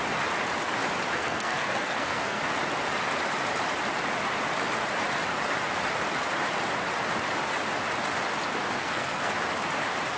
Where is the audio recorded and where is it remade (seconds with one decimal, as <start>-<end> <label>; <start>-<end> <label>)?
0.0-1.2 recorded; 1.2-2.4 remade; 2.4-8.8 recorded; 8.8-9.3 remade; 9.3-10.2 recorded